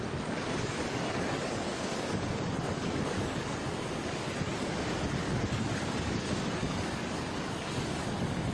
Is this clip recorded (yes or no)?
no